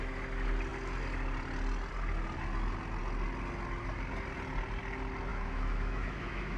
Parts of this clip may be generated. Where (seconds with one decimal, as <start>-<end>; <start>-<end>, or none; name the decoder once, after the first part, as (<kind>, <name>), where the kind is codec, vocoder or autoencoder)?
5.3-6.6 (autoencoder, DAC-VAE)

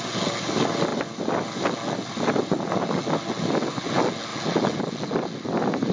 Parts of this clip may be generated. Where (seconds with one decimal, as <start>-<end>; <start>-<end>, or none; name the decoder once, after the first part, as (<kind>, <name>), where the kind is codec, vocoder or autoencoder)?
none

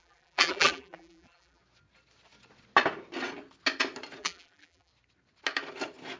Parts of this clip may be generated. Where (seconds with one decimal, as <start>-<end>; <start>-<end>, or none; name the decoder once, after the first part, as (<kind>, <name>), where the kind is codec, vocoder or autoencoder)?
0.0-1.6 (vocoder, BigVGAN v2); 4.2-4.9

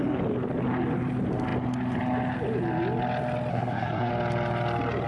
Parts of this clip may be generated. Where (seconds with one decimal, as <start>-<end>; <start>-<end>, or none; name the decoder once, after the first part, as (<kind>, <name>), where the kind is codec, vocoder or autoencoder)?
3.5-4.1 (codec, SNAC)

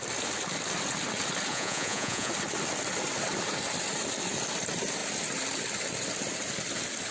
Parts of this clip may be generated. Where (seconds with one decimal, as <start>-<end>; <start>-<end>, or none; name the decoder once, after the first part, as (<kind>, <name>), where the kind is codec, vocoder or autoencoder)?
1.5-2.3 (vocoder, Vocos)

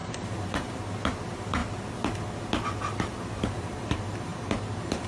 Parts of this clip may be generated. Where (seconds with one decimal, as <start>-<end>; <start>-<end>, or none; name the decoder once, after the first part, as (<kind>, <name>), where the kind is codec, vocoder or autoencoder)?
0.0-1.6 (vocoder, BigVGAN v2); 3.5-5.1

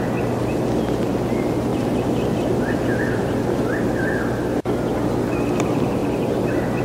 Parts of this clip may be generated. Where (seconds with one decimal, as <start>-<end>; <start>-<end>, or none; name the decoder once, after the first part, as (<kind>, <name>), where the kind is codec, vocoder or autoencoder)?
none